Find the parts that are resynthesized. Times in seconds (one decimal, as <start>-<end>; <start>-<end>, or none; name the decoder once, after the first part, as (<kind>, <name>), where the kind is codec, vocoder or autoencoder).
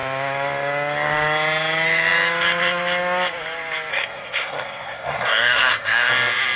3.9-6.1 (codec, SNAC)